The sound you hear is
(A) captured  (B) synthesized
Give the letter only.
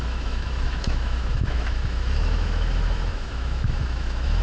B